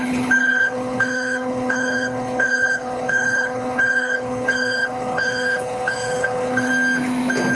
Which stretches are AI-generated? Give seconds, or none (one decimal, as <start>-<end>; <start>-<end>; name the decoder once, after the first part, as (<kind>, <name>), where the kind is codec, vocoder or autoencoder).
0.0-6.7 (codec, HILCodec)